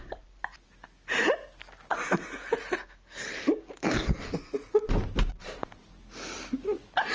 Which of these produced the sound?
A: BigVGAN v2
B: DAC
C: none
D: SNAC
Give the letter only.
C